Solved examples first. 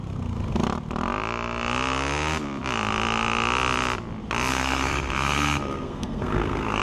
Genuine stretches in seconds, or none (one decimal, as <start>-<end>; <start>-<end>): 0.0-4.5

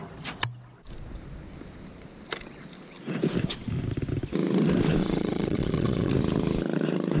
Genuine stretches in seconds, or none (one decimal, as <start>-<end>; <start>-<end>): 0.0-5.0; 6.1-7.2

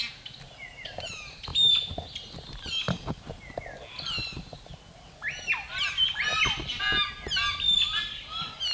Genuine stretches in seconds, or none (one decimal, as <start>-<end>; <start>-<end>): 0.0-8.7

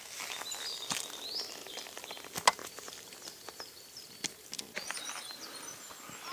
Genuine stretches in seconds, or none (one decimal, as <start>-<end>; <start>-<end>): 0.0-1.6; 2.1-2.6; 4.1-6.3